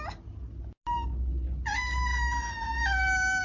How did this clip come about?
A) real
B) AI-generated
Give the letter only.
A